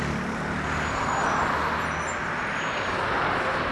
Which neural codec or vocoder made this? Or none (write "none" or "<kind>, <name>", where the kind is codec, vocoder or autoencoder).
none